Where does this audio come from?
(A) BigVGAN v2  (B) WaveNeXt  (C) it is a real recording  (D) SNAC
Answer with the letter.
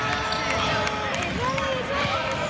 C